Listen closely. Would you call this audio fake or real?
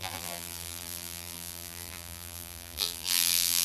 fake